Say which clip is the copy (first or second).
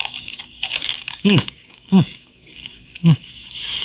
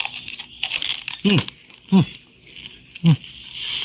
first